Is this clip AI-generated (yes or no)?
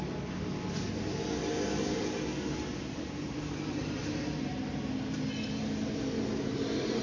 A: no